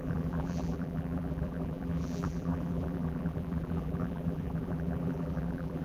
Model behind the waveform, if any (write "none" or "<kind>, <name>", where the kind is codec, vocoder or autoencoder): vocoder, BigVGAN v2